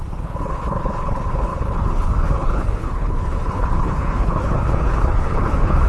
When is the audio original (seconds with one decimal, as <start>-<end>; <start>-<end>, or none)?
none